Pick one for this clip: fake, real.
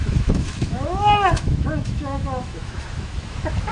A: fake